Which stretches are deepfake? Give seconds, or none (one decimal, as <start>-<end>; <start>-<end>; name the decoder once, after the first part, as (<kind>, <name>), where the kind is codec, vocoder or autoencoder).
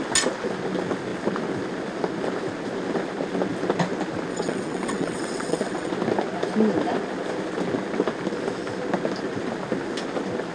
4.3-5.9 (vocoder, WaveNeXt)